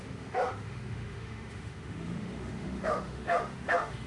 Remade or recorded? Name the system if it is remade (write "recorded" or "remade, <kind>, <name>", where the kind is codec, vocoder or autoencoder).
remade, autoencoder, DAC-VAE